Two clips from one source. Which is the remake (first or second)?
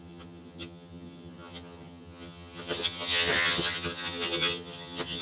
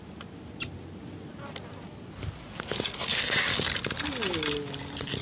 first